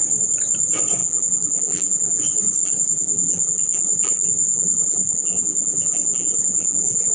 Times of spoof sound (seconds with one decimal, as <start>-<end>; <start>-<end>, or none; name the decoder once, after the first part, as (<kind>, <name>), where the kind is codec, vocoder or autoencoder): 1.0-2.2 (vocoder, BigVGAN v2); 2.6-7.1